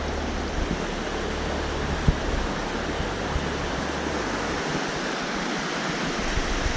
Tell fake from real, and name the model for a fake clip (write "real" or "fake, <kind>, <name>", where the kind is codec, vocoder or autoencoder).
real